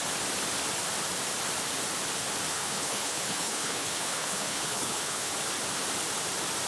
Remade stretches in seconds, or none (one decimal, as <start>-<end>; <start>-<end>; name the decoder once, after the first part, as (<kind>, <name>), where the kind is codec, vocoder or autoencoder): 2.5-5.3 (codec, HILCodec)